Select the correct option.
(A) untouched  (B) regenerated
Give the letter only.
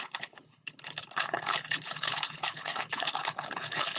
B